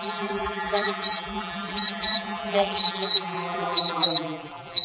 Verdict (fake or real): fake